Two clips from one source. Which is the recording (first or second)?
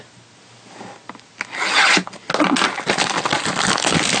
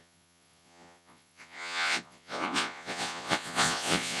first